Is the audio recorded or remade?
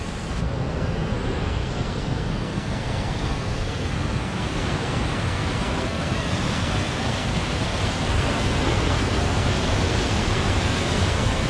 remade